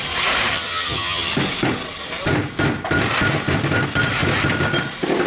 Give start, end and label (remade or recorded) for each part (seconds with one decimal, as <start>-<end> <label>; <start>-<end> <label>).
0.0-0.5 recorded; 0.5-1.3 remade; 1.3-5.3 recorded